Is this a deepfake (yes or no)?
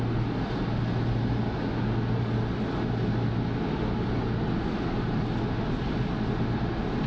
no